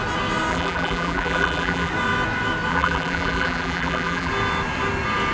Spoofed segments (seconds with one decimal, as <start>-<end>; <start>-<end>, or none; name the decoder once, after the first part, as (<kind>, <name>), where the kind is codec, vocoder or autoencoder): 0.5-1.9 (vocoder, BigVGAN v2); 2.7-4.3